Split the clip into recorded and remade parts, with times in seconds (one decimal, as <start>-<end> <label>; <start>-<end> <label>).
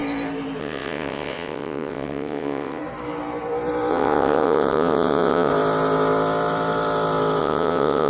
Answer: 0.0-0.6 recorded; 0.6-2.8 remade; 2.8-3.9 recorded; 3.9-5.5 remade; 5.5-7.4 recorded; 7.4-8.1 remade